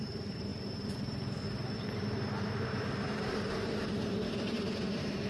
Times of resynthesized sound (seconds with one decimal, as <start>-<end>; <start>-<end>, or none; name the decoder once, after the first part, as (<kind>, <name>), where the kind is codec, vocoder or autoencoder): 0.0-5.3 (vocoder, BigVGAN v2)